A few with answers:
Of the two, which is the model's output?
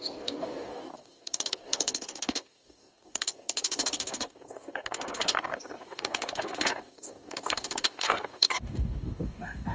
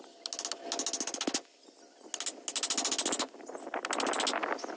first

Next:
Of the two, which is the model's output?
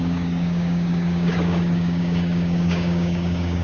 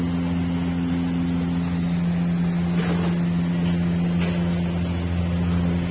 first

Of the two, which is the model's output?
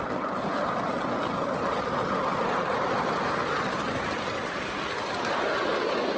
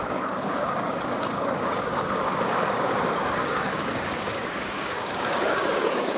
second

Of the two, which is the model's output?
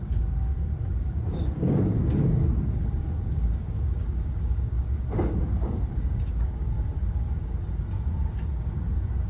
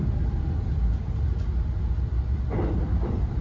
first